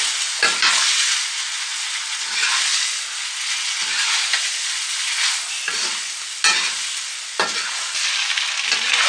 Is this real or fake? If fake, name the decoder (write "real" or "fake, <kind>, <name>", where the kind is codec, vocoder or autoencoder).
real